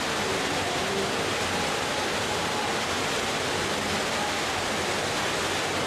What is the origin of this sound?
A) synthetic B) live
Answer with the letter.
B